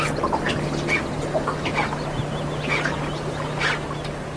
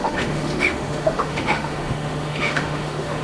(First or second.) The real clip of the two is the first